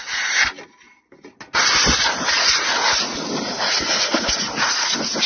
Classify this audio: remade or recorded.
recorded